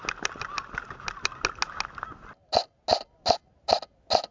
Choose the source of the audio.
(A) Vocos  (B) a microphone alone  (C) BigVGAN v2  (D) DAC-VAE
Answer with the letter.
B